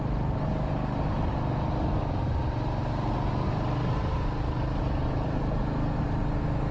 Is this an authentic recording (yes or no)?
yes